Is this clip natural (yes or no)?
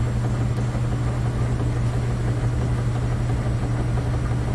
yes